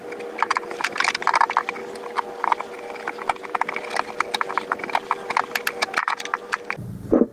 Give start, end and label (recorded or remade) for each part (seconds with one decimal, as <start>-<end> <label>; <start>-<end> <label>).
0.0-7.3 recorded